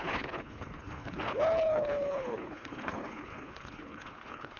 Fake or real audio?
fake